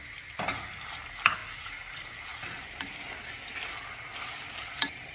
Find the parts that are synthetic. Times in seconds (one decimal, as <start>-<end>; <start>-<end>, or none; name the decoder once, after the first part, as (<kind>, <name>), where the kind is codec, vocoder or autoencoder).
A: none